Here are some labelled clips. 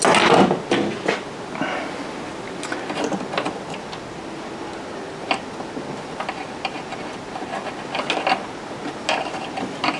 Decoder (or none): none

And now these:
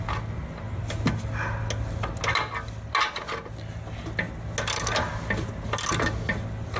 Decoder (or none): none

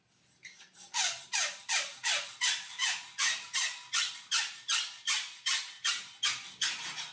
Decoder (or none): none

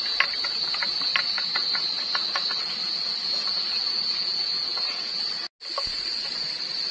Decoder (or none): none